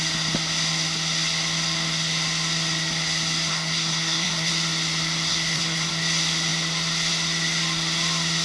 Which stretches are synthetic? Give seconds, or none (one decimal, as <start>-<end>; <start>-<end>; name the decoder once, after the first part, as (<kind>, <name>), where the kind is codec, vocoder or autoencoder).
3.5-4.5 (codec, SNAC); 5.3-5.9